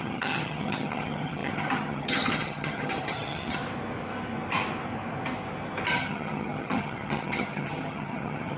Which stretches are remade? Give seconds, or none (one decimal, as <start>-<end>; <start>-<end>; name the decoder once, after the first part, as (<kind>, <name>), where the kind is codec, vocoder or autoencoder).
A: 0.0-3.6 (vocoder, HiFi-GAN); 5.9-8.6